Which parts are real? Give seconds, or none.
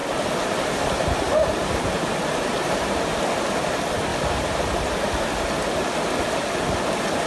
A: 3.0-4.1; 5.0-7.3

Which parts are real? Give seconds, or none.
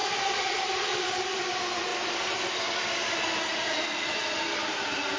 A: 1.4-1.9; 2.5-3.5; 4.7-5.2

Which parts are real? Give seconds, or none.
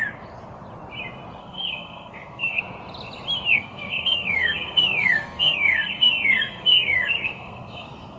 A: 0.0-1.4; 2.6-3.5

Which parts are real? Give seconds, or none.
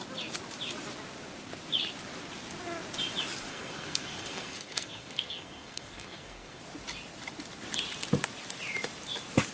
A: 0.0-3.5; 6.6-9.5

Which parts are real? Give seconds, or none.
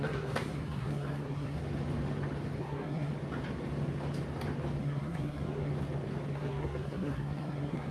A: 1.6-2.6; 3.1-4.8; 5.7-6.3